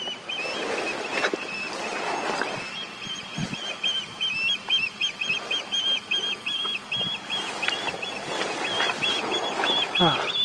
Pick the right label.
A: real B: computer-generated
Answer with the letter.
A